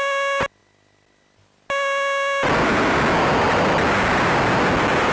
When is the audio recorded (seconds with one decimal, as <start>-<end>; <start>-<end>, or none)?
0.0-5.1